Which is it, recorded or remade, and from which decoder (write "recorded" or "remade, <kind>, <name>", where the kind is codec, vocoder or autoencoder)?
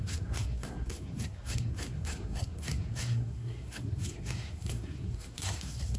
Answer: remade, codec, SNAC